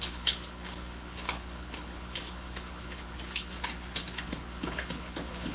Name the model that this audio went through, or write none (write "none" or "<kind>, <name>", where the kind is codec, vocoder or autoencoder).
codec, HILCodec